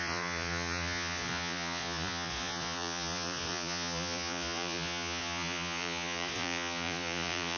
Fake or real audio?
fake